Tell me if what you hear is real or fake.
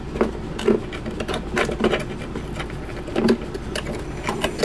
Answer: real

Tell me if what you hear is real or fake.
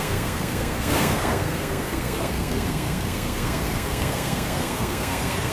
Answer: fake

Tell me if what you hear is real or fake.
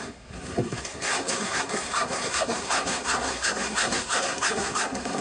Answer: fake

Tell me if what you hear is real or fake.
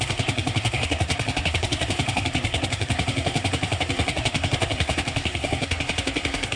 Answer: fake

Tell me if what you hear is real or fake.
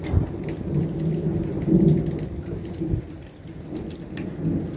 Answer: real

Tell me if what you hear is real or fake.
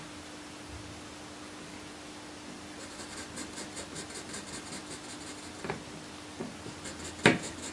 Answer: real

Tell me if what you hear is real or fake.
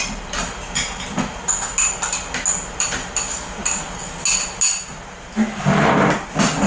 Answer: real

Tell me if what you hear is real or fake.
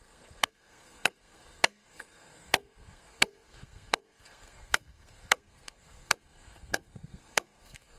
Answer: fake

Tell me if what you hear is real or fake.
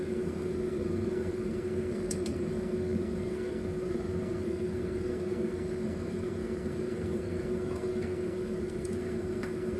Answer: fake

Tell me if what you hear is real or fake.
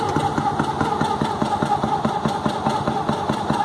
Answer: real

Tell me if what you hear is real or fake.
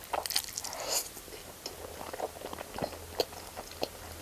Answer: real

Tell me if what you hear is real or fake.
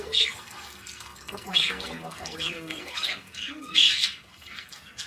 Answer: fake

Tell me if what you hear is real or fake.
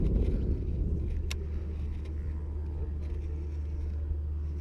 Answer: real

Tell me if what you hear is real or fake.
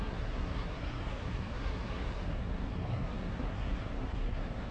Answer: fake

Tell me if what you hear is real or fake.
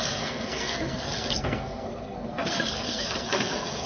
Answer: fake